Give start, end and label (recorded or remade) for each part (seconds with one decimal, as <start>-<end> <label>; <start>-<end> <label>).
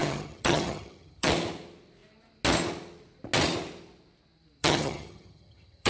0.0-1.3 remade; 1.3-4.6 recorded; 4.6-5.9 remade